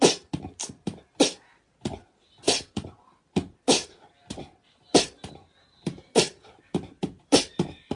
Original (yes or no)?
no